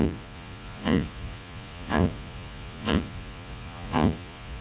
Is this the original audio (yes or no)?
no